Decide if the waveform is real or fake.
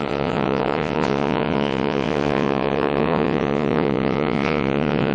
fake